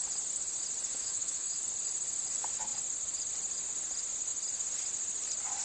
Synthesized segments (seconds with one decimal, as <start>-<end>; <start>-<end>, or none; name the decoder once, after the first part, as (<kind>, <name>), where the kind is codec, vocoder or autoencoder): 0.9-1.6 (autoencoder, DAC-VAE)